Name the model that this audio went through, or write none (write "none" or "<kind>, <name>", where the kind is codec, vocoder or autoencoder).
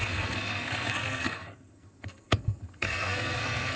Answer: codec, SNAC